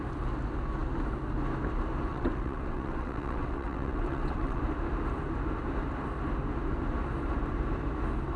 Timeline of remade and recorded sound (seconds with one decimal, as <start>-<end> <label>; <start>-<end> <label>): 0.0-2.1 recorded; 2.1-4.6 remade; 4.6-8.4 recorded